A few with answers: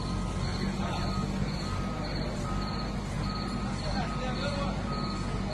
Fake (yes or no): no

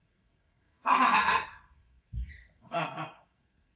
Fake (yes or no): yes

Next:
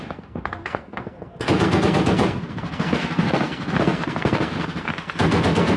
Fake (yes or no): yes